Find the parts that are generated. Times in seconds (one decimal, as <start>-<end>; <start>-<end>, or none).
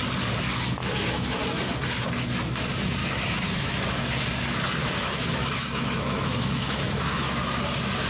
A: 0.8-1.4; 3.0-4.0; 4.8-7.4